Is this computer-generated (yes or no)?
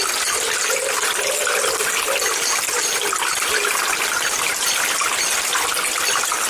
no